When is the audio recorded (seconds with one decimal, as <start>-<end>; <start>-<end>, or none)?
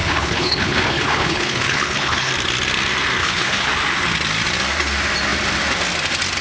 2.3-3.2; 3.7-6.4